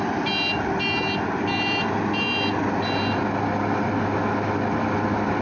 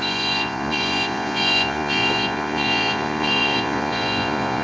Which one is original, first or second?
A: first